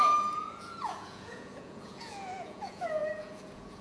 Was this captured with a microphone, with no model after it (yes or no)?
no